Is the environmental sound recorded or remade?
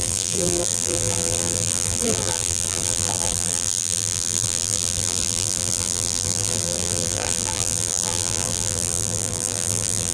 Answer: remade